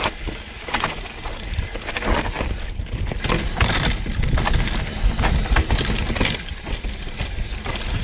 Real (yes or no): yes